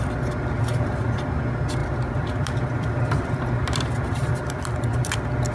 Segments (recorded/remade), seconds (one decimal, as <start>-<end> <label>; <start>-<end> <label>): 0.0-0.7 recorded; 0.7-1.4 remade; 1.4-1.8 recorded; 1.8-5.1 remade; 5.1-5.5 recorded